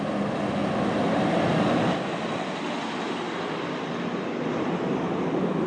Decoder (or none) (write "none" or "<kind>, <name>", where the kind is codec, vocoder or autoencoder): none